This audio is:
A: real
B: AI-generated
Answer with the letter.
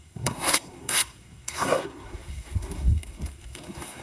B